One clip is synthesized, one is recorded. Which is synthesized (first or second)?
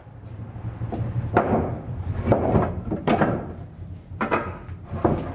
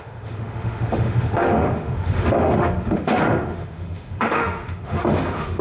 second